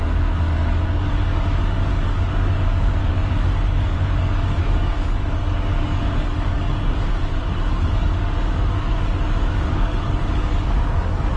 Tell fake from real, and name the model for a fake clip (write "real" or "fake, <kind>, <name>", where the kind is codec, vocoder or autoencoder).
fake, codec, DAC